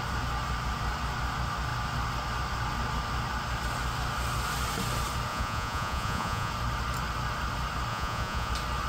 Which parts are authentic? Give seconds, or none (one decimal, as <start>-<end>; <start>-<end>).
0.0-5.3; 6.5-7.9; 8.5-8.9